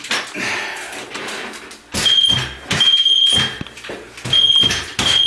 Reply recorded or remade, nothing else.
remade